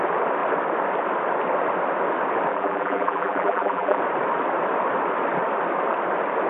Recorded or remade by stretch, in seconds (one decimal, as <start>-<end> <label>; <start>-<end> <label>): 0.0-2.5 recorded; 2.5-4.0 remade; 4.0-6.5 recorded